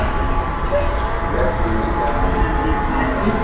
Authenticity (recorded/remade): recorded